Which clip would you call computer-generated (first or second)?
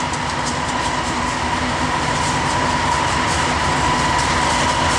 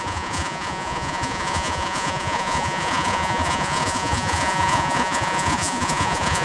second